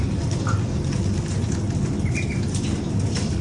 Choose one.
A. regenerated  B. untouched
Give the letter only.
A